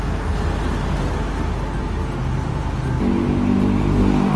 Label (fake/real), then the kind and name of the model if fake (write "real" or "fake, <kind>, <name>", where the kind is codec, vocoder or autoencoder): real